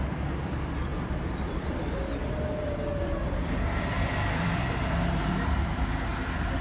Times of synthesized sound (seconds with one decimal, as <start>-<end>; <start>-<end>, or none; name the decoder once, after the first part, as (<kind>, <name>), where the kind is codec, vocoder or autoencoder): 0.9-1.8 (vocoder, BigVGAN v2); 3.9-5.8